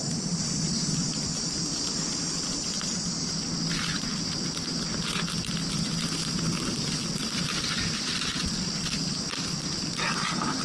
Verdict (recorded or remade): recorded